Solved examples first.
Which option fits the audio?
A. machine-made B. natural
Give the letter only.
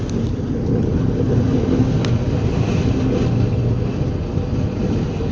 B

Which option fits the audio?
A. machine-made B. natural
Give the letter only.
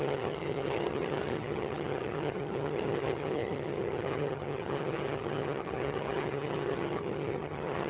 A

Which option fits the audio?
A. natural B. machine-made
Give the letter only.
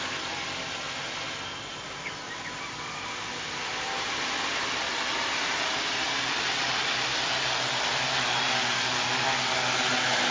A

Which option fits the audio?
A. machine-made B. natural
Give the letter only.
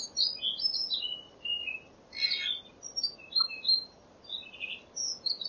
B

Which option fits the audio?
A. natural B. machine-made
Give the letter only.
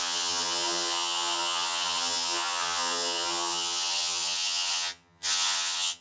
B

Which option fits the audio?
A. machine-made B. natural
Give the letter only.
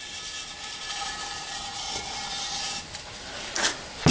B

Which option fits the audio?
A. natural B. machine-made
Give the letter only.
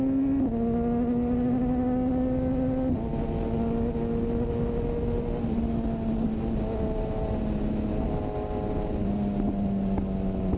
A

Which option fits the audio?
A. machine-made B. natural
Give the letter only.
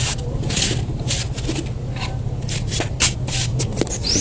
B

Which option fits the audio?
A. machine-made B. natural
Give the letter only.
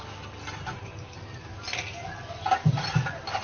B